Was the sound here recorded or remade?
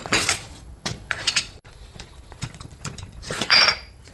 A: remade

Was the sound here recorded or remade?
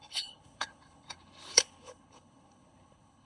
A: remade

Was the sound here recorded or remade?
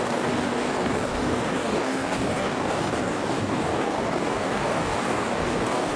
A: remade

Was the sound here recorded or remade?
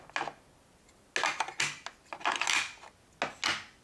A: recorded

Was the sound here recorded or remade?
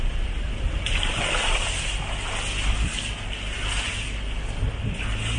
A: recorded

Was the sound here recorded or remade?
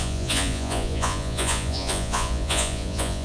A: remade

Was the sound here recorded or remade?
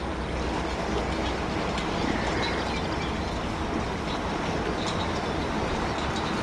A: recorded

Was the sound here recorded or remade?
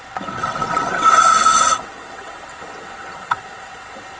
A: remade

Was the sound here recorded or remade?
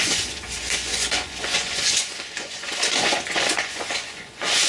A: remade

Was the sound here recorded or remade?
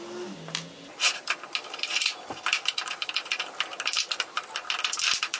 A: recorded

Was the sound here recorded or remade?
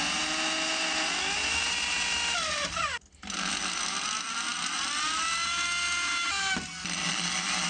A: recorded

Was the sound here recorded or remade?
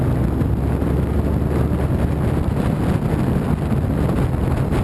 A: recorded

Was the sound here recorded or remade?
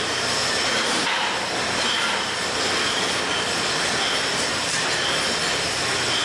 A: recorded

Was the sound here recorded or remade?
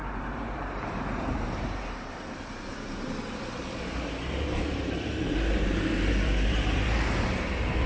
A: remade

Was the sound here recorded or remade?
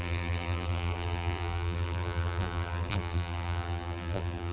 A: remade